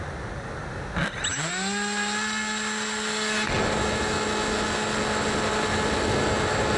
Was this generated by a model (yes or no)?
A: no